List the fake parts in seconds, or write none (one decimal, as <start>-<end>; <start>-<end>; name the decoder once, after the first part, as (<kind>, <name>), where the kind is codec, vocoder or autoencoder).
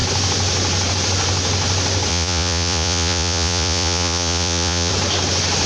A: 2.1-4.9 (vocoder, Vocos)